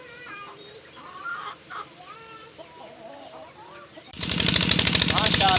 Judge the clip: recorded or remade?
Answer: remade